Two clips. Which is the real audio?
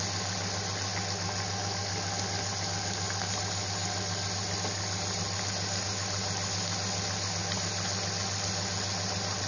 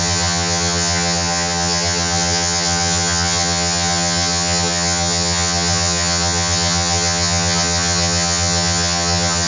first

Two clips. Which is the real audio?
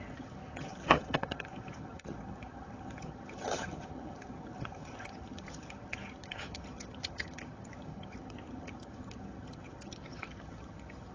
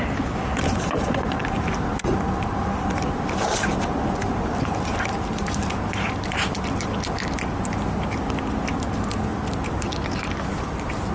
second